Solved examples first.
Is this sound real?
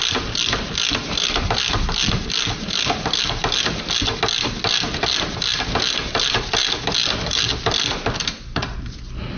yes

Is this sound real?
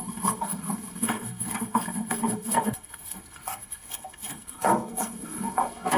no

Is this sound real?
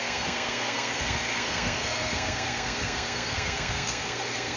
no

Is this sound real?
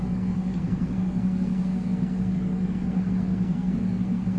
no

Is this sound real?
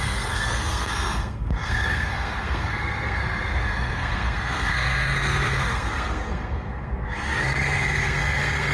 no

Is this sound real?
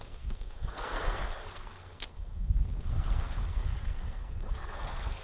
no